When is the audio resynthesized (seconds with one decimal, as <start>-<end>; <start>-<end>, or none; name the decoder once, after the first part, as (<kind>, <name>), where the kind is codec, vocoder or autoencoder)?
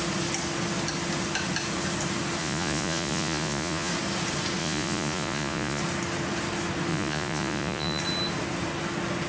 2.4-3.9 (vocoder, Vocos); 4.6-5.8; 6.9-8.0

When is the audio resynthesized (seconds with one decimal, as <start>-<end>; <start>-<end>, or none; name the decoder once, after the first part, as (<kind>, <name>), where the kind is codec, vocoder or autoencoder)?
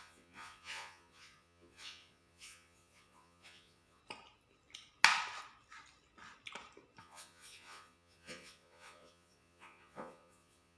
0.0-4.0 (vocoder, Vocos); 7.0-10.8